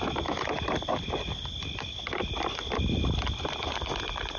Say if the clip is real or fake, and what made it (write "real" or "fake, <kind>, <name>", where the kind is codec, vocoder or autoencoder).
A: real